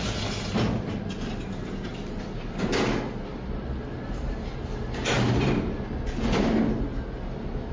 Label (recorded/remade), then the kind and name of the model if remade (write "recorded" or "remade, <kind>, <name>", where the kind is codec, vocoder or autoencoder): recorded